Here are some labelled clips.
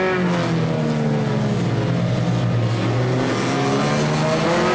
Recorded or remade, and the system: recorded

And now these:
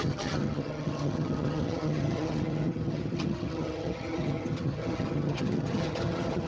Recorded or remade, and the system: remade, vocoder, HiFi-GAN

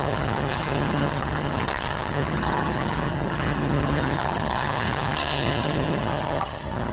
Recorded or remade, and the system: remade, vocoder, HiFi-GAN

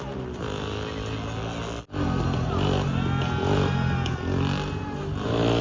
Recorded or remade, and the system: recorded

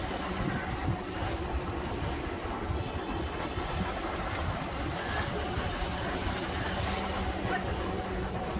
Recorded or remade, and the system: recorded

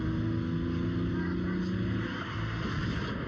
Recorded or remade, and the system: recorded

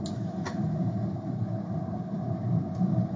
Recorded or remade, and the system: recorded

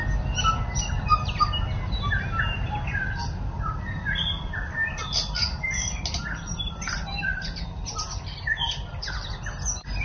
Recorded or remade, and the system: recorded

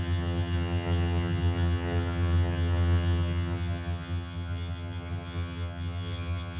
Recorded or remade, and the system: remade, vocoder, HiFi-GAN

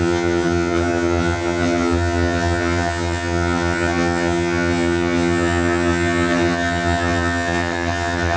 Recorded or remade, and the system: remade, vocoder, HiFi-GAN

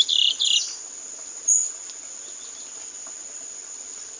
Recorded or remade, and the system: recorded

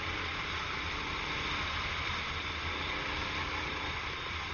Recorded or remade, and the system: recorded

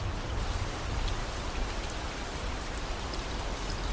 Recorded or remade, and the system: recorded